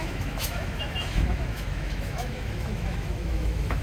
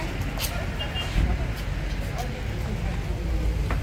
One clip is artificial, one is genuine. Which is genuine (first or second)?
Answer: second